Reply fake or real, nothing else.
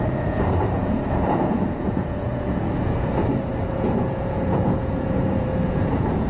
fake